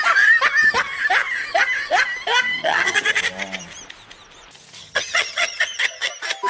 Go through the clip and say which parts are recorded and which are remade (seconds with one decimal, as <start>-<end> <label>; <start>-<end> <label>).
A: 0.0-2.6 recorded; 2.6-3.2 remade; 3.2-4.8 recorded; 4.8-6.1 remade; 6.1-6.5 recorded